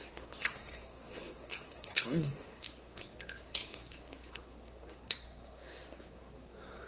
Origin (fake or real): fake